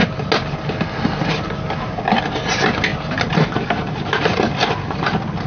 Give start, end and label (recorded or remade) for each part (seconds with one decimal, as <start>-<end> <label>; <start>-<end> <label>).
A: 0.0-5.5 recorded